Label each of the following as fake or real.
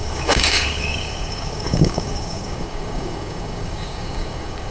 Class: fake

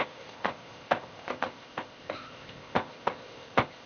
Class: fake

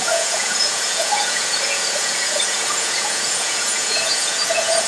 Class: fake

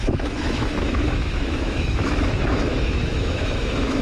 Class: fake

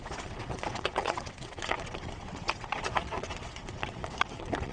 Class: fake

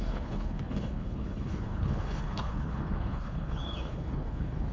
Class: fake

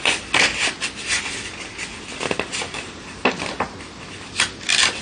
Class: real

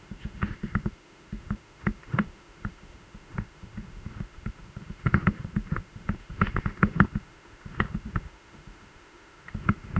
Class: fake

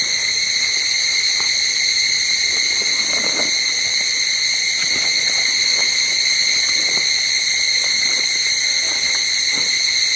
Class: real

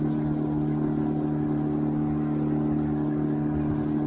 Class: real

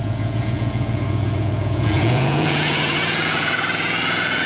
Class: fake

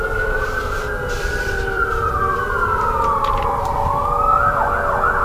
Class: fake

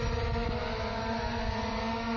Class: real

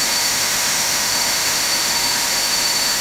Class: fake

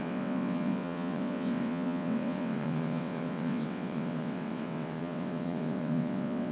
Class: fake